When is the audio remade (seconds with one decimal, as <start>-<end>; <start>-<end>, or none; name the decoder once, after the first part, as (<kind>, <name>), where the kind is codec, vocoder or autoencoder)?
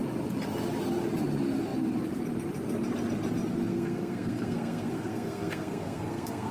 3.7-6.5 (codec, SNAC)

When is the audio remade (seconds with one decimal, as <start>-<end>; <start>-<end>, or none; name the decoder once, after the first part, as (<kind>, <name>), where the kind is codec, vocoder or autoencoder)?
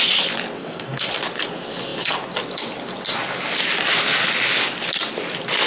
0.6-1.1 (codec, SNAC)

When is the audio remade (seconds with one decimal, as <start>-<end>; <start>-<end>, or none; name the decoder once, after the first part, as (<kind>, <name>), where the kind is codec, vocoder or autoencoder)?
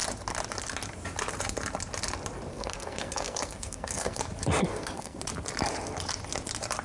2.5-4.2 (codec, SNAC); 4.7-5.2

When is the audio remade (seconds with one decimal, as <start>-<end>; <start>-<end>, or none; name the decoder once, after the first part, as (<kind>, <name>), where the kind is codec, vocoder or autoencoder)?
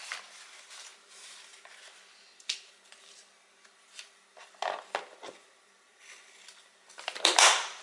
0.0-0.9 (vocoder, BigVGAN v2); 5.3-7.8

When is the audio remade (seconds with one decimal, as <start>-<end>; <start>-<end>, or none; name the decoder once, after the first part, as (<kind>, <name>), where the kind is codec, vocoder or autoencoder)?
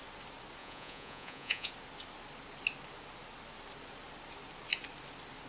0.6-1.7 (vocoder, Vocos)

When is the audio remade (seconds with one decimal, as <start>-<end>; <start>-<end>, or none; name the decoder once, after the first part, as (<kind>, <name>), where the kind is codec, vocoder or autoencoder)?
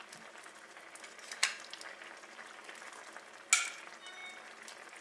none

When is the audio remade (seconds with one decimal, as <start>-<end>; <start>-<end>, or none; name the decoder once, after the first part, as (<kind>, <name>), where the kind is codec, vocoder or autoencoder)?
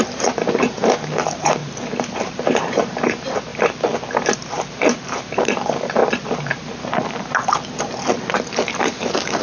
0.0-1.6 (vocoder, BigVGAN v2); 2.1-3.5; 4.5-6.0; 8.8-9.4